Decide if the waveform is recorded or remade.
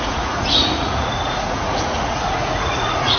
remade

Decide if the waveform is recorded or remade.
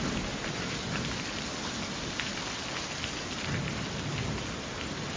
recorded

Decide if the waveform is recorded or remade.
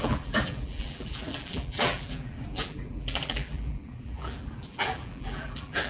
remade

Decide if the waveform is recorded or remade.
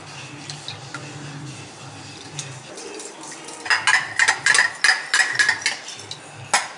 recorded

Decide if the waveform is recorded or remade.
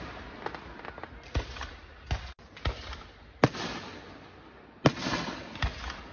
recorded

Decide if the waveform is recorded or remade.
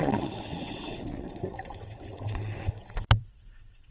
remade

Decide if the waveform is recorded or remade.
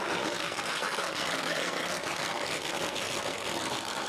remade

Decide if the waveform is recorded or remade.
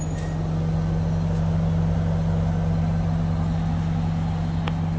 recorded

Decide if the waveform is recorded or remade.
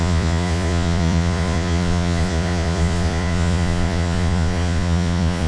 remade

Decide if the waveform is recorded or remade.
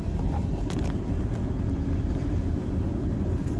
recorded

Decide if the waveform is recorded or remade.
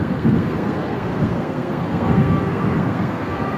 remade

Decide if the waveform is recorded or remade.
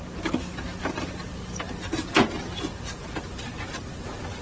recorded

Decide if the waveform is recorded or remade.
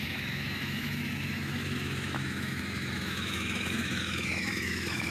remade